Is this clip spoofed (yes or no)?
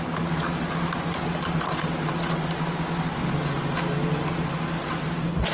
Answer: no